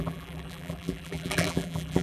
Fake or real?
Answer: fake